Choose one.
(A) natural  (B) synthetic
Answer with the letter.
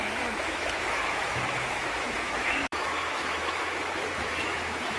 B